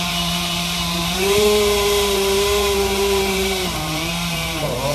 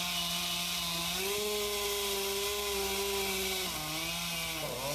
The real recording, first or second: second